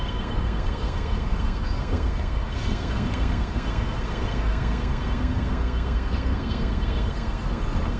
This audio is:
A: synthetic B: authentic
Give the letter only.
A